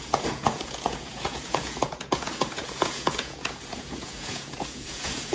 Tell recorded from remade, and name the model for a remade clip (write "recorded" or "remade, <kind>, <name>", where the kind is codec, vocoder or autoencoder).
remade, vocoder, Vocos